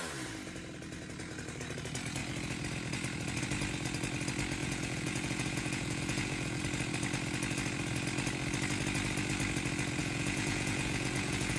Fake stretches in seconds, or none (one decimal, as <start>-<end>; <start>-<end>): 4.6-6.6; 10.0-11.6